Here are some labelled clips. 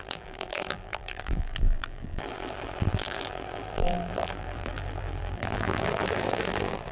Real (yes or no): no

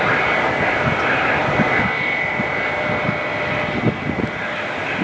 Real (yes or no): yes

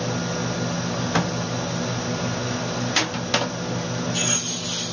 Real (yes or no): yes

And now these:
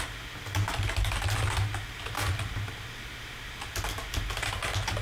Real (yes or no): yes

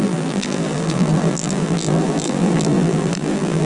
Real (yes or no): no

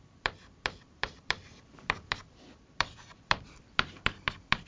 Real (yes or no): no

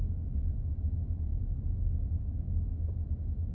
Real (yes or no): yes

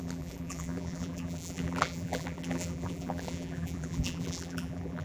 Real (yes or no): no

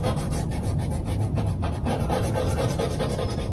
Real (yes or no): no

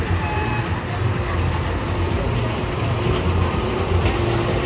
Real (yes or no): yes